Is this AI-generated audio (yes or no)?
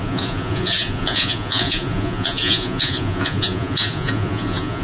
yes